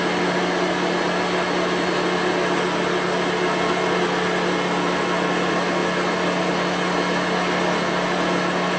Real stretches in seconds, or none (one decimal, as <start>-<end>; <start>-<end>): 0.0-8.8